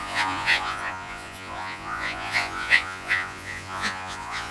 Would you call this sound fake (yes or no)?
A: yes